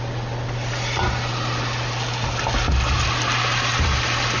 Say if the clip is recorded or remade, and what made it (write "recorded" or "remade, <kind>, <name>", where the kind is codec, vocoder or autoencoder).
recorded